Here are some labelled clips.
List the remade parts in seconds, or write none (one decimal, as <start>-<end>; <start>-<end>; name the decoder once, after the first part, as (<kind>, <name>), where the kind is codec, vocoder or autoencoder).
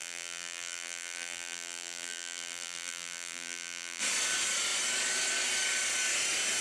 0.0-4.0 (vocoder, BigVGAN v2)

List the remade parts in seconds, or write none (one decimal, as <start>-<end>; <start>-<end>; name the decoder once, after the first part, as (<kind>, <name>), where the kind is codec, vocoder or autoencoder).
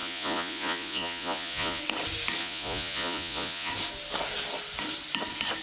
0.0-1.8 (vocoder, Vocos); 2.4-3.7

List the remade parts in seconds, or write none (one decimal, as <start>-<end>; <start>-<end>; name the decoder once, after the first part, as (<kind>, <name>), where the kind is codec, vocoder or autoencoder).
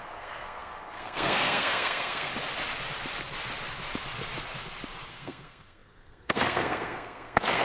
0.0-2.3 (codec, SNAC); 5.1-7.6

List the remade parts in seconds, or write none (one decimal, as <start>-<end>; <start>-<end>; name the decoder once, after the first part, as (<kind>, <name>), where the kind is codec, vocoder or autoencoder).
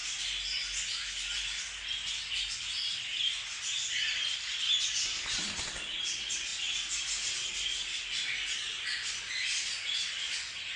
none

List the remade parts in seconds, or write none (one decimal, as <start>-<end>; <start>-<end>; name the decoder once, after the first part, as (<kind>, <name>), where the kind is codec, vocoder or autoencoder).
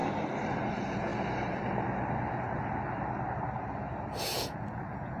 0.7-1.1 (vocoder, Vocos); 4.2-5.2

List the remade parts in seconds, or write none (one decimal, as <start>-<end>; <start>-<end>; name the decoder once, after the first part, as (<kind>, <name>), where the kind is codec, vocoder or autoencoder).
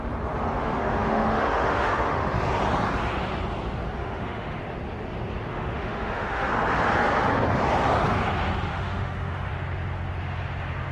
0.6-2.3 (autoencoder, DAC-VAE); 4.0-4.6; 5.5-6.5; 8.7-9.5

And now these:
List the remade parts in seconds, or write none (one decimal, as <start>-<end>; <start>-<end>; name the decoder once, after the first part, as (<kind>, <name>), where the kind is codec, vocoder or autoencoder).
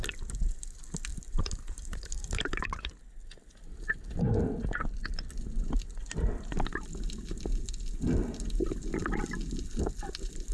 1.1-2.9 (vocoder, BigVGAN v2)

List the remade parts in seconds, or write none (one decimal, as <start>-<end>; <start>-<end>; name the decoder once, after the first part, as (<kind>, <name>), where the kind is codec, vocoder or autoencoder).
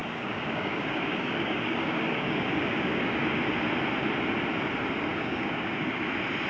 0.0-3.4 (codec, DAC); 5.1-6.1